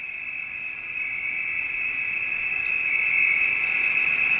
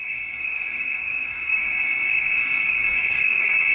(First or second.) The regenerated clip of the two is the second